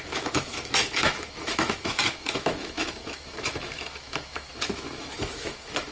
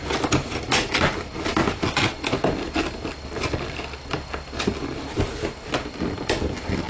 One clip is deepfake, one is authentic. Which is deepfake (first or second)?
first